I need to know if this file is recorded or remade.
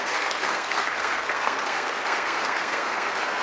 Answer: remade